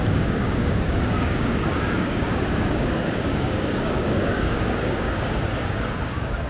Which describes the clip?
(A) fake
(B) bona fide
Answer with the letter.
A